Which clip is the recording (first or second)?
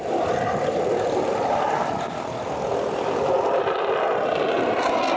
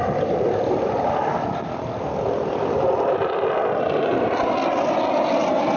first